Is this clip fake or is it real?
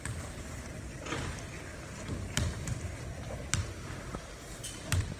real